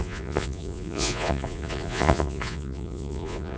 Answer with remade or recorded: remade